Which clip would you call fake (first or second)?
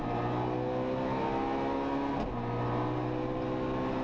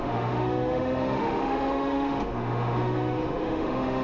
second